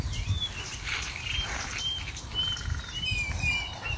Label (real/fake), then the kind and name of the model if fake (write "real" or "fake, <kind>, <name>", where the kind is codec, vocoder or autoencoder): real